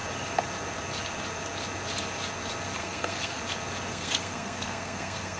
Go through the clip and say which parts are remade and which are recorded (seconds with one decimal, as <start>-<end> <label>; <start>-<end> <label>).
0.0-2.8 recorded; 2.8-3.4 remade; 3.4-3.9 recorded; 3.9-5.4 remade